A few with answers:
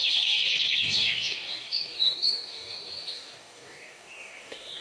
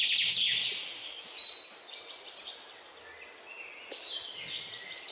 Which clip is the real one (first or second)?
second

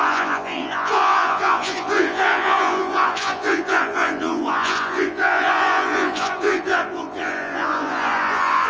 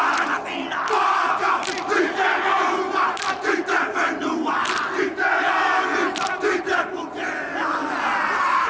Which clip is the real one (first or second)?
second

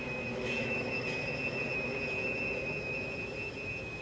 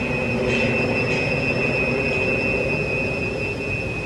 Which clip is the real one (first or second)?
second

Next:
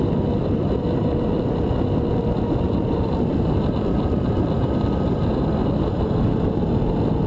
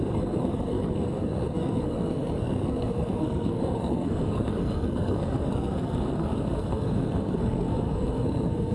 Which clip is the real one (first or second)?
first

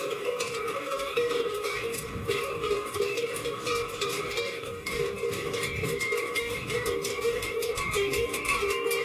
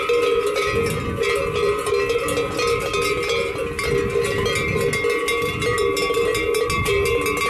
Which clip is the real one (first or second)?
second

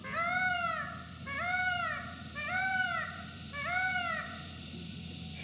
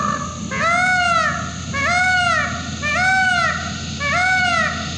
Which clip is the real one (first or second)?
second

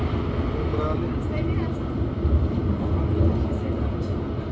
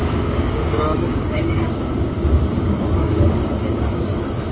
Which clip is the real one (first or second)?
first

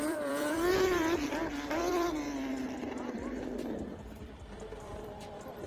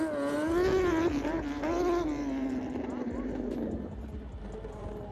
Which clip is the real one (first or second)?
second